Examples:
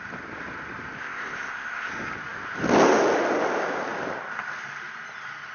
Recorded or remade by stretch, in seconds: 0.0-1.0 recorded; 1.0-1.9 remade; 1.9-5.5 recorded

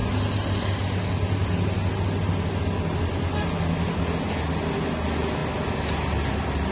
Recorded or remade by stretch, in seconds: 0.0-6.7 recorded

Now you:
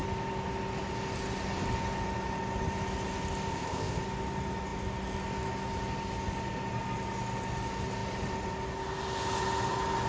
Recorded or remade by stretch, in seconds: 0.0-3.5 recorded; 3.5-4.0 remade; 4.0-10.1 recorded

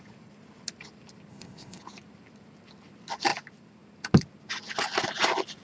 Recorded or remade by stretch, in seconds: 0.0-1.3 recorded; 1.3-1.8 remade; 1.8-5.6 recorded